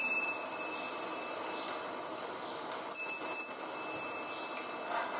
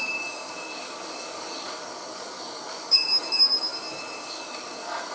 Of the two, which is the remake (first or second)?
second